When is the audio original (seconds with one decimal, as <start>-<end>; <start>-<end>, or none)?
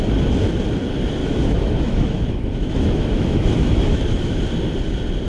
0.0-1.2; 4.4-5.3